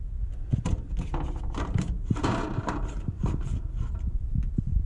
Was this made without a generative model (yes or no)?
no